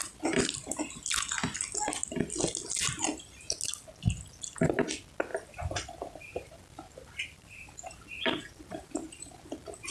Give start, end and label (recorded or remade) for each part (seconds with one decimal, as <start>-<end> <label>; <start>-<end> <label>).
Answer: 0.0-5.3 recorded; 5.3-9.9 remade